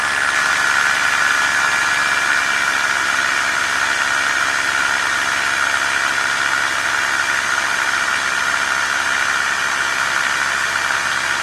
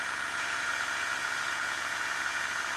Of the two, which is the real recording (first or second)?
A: first